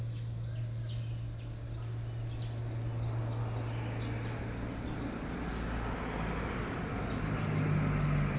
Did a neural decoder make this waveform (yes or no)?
no